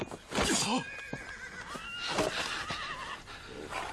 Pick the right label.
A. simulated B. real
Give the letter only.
B